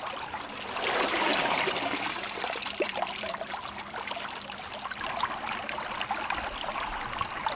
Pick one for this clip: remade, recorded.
recorded